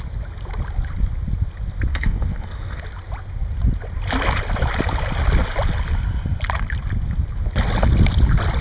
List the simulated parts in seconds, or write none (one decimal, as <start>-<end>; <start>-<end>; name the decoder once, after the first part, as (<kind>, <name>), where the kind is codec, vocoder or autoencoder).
1.9-2.8 (codec, SNAC)